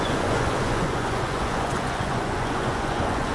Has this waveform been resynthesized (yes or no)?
yes